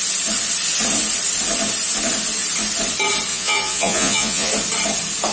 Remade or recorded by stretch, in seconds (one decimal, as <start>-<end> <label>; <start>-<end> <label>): 0.0-3.3 recorded; 3.3-4.5 remade; 4.5-5.3 recorded